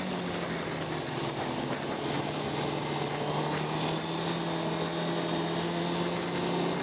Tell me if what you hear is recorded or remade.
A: recorded